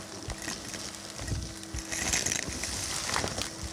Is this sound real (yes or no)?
yes